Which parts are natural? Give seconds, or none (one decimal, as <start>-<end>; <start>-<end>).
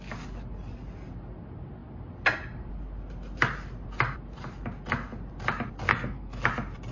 0.0-5.9; 6.4-6.9